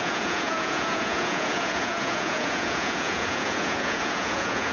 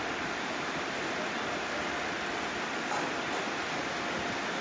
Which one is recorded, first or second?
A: second